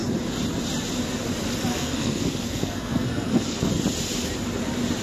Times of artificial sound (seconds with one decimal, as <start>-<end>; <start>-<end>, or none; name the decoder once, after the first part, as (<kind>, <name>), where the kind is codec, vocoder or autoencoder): 1.7-3.7 (codec, SNAC)